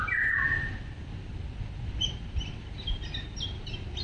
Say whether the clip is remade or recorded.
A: recorded